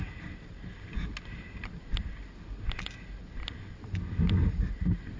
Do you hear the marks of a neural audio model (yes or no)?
no